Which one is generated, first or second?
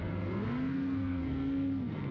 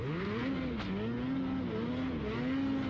first